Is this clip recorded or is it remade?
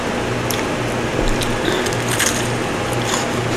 recorded